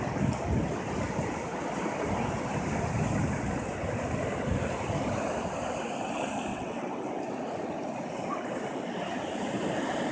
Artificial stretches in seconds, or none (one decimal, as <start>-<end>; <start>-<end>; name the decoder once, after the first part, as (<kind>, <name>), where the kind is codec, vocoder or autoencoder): 6.5-7.1 (vocoder, WaveNeXt)